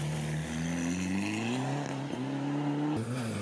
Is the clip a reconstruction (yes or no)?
no